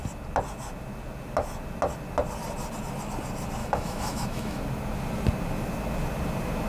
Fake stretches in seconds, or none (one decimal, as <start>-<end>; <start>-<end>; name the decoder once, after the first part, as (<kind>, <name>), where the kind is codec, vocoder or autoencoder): 3.6-4.6 (autoencoder, DAC-VAE)